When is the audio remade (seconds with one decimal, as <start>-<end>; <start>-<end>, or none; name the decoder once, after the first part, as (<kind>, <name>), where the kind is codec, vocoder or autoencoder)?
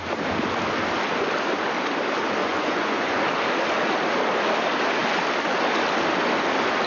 2.4-3.2 (vocoder, Vocos)